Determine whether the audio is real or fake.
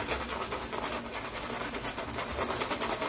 real